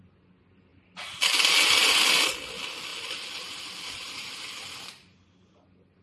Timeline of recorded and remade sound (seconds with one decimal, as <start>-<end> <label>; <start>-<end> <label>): 0.0-2.9 recorded; 2.9-4.8 remade; 4.8-6.0 recorded

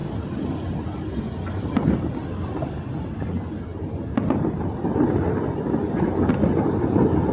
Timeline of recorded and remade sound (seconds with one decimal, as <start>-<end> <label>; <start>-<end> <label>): 0.0-7.3 recorded

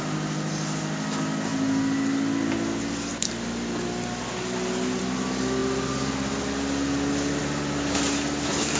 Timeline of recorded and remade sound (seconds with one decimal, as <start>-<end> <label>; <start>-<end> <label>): 0.0-8.8 recorded